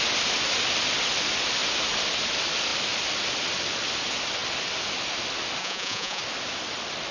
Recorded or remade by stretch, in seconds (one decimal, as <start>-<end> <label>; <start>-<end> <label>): 0.0-5.6 recorded; 5.6-6.2 remade; 6.2-7.1 recorded